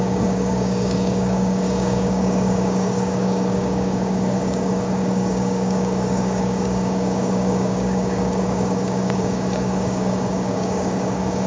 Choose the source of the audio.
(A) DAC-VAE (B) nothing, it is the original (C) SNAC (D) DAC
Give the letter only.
D